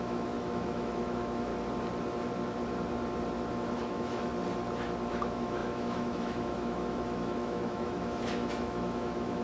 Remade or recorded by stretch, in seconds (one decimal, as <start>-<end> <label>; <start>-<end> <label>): 0.0-1.5 remade; 1.5-3.5 recorded; 3.5-4.3 remade; 4.3-5.1 recorded; 5.1-9.4 remade